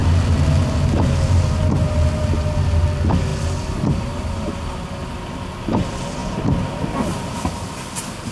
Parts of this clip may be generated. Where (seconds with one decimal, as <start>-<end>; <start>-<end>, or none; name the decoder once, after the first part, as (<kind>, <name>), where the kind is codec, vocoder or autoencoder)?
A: none